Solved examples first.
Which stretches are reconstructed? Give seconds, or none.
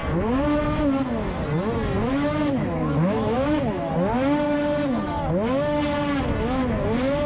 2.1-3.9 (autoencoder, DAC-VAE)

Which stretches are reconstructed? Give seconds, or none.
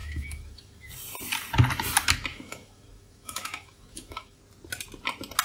0.0-0.9 (autoencoder, DAC-VAE); 2.3-4.4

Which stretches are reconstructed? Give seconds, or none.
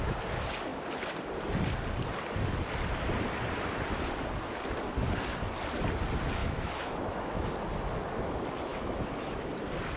6.4-7.5 (autoencoder, DAC-VAE); 8.7-9.5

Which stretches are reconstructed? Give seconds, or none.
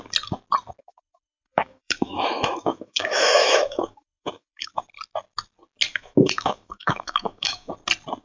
0.8-4.7 (autoencoder, DAC-VAE); 5.9-7.7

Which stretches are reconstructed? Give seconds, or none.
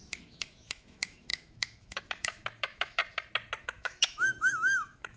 0.0-3.0 (autoencoder, DAC-VAE); 3.6-5.2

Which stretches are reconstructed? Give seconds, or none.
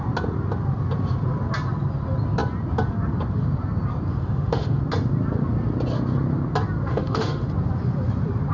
4.1-4.8 (autoencoder, DAC-VAE); 6.9-7.5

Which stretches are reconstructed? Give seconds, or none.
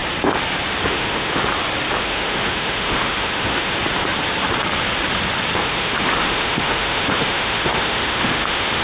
0.9-1.5 (autoencoder, DAC-VAE); 2.0-3.7; 5.6-8.8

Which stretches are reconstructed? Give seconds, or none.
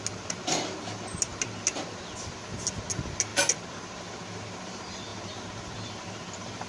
none